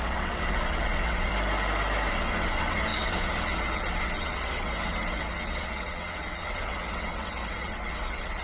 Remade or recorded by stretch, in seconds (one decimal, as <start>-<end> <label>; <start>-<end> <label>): 0.0-1.3 remade; 1.3-2.1 recorded; 2.1-8.4 remade